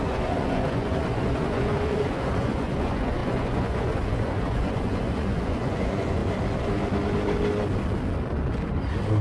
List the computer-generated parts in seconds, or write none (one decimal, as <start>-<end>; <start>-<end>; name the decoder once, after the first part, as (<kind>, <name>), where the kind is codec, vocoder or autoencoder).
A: 0.0-6.2 (vocoder, Vocos)